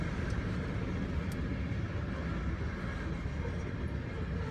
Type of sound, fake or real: real